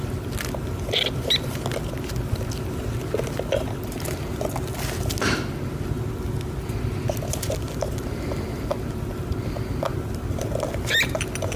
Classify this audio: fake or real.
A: real